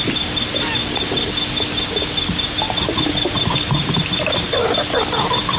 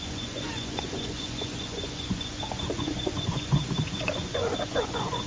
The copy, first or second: second